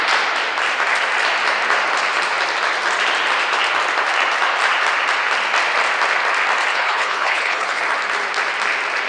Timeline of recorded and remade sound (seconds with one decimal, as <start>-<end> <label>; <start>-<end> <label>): 0.0-6.7 recorded; 6.7-7.8 remade; 7.8-9.1 recorded